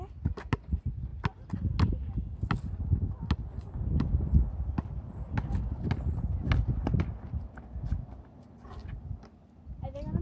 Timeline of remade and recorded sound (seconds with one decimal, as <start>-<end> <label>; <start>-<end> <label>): 0.0-10.2 recorded